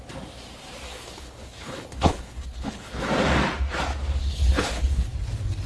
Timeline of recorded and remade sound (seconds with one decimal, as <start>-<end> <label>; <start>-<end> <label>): 0.0-0.9 recorded; 0.9-3.0 remade; 3.0-4.2 recorded; 4.2-5.1 remade; 5.1-5.7 recorded